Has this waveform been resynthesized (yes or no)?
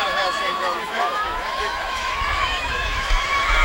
yes